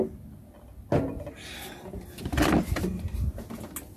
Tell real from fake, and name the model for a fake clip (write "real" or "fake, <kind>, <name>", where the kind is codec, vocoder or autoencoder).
real